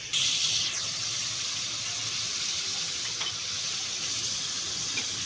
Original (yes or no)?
yes